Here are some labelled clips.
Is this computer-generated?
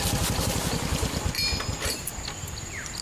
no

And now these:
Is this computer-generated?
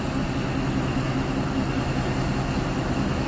no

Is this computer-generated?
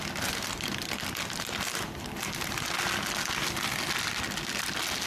no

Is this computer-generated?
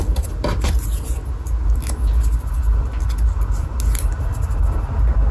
no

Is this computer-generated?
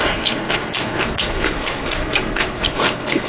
yes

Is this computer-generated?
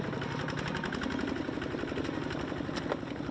no